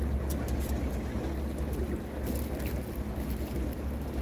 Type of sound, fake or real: real